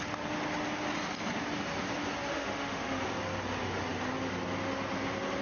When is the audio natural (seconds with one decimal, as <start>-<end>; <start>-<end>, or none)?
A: 0.0-2.3; 3.0-5.4